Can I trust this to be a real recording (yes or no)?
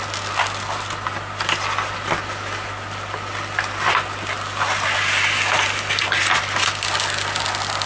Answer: yes